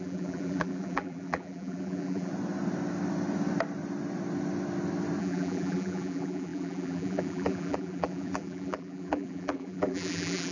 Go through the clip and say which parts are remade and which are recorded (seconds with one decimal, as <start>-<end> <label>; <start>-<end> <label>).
0.0-2.3 remade; 2.3-5.2 recorded; 5.2-10.5 remade